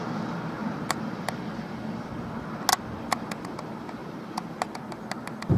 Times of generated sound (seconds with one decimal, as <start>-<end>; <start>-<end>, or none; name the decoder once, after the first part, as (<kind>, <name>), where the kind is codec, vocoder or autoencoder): 0.6-1.4 (vocoder, BigVGAN v2); 4.0-4.6